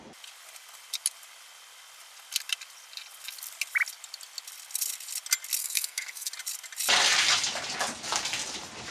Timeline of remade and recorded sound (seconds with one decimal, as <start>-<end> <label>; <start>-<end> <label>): 0.0-5.6 recorded; 5.6-6.3 remade; 6.3-8.9 recorded